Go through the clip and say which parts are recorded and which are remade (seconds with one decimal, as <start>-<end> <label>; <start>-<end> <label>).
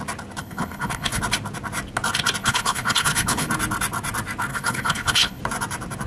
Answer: 0.0-0.4 recorded; 0.4-1.2 remade; 1.2-2.4 recorded; 2.4-3.5 remade; 3.5-4.5 recorded; 4.5-5.4 remade; 5.4-6.1 recorded